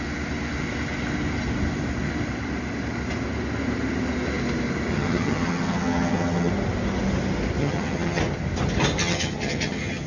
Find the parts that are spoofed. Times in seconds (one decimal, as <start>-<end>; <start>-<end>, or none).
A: 4.9-6.5; 7.6-8.2; 9.0-10.1